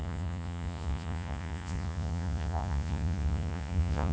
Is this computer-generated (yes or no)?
yes